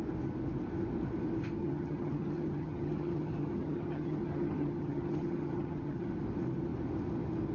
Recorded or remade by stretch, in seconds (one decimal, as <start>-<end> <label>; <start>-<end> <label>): 0.0-1.6 recorded; 1.6-6.1 remade; 6.1-7.5 recorded

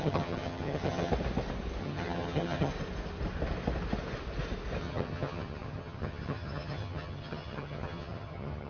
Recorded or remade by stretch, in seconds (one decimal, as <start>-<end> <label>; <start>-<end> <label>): 0.0-1.1 remade; 1.1-1.8 recorded; 1.8-2.7 remade; 2.7-4.8 recorded; 4.8-8.7 remade

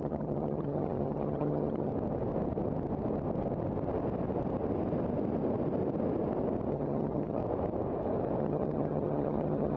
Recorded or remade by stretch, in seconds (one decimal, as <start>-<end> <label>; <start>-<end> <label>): 0.0-1.9 remade; 1.9-6.7 recorded; 6.7-7.4 remade; 7.4-8.4 recorded; 8.4-9.8 remade